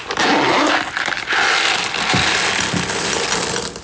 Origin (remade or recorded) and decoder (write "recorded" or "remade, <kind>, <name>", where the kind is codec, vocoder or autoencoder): recorded